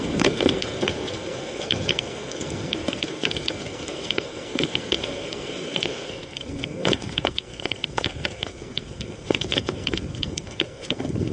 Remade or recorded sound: remade